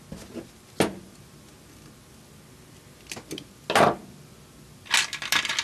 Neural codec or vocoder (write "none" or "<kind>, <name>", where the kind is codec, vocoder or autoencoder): none